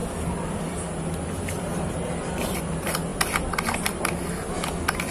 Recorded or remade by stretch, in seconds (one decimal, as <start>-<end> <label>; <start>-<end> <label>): 0.0-1.7 recorded; 1.7-2.6 remade; 2.6-5.1 recorded